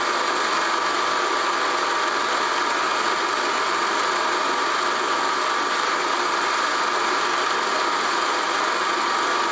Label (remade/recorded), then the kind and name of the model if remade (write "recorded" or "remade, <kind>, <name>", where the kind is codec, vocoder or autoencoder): recorded